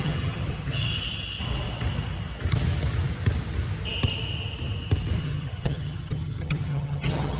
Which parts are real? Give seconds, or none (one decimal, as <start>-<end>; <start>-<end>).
0.9-5.2